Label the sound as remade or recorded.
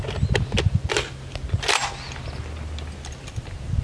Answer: recorded